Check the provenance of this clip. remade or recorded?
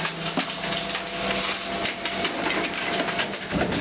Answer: recorded